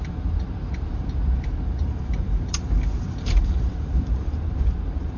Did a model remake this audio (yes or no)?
yes